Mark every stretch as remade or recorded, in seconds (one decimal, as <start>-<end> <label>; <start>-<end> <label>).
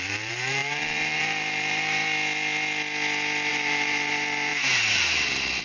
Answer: 0.0-2.0 remade; 2.0-3.5 recorded; 3.5-5.6 remade